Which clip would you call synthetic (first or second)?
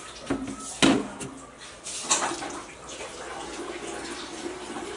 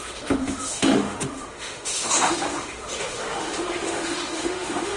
second